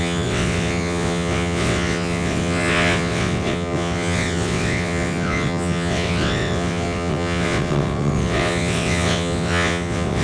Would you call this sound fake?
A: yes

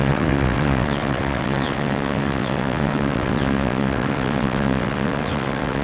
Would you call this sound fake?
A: yes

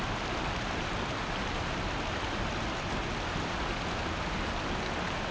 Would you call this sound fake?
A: no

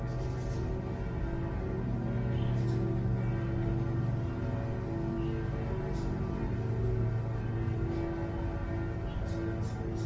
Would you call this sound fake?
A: no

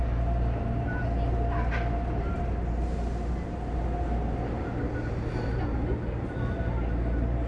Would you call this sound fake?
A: no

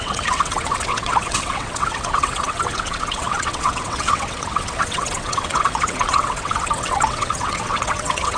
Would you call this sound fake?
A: yes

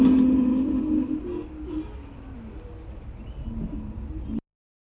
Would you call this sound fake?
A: no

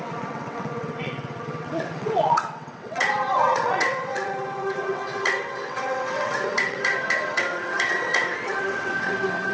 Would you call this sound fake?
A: yes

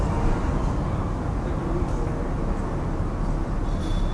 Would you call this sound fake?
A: no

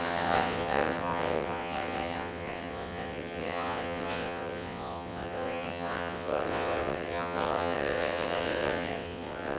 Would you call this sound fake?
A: yes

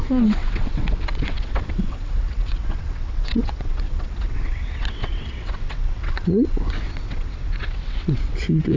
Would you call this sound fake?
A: yes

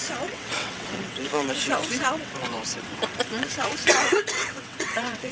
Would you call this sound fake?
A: yes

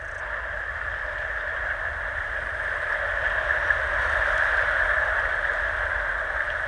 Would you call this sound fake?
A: no